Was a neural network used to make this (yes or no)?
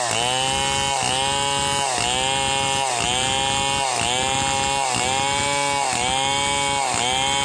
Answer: no